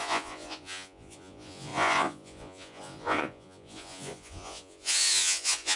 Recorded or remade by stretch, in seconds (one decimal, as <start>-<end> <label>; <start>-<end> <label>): 0.0-5.8 remade